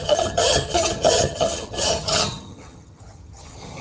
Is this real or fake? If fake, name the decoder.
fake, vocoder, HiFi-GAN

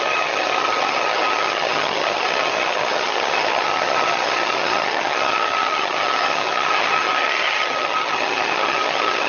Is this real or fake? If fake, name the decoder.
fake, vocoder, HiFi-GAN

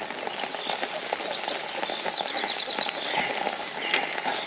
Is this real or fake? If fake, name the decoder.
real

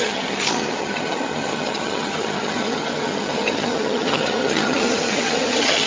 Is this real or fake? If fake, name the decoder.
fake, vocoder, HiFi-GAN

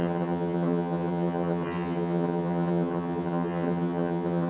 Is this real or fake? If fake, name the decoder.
fake, vocoder, HiFi-GAN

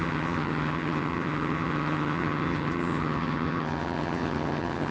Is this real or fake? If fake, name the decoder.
fake, vocoder, HiFi-GAN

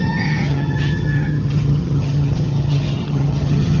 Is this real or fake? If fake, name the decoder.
fake, vocoder, HiFi-GAN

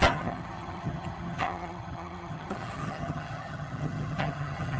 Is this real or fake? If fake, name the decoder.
fake, vocoder, HiFi-GAN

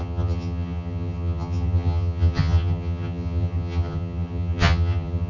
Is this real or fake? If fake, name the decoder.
fake, vocoder, HiFi-GAN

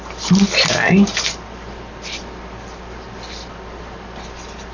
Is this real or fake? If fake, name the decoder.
real